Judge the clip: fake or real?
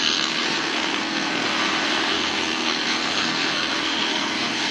fake